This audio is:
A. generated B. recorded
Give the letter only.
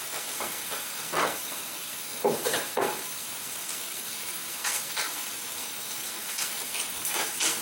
A